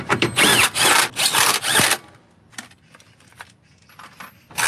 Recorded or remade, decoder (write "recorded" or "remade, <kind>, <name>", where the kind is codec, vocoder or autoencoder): recorded